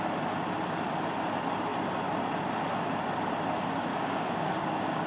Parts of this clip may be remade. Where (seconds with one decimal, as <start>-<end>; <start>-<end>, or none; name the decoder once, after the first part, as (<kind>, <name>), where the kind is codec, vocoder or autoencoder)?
3.9-5.1 (codec, DAC)